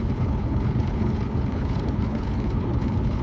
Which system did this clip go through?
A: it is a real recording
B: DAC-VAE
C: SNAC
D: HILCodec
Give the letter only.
D